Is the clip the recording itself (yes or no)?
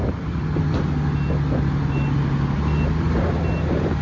yes